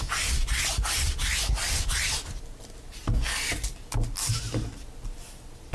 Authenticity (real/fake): real